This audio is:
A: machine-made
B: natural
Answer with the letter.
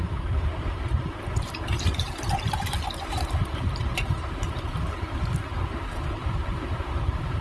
A